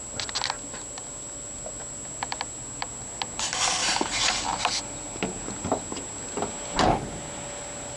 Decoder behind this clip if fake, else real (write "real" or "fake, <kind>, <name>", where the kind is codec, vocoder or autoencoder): real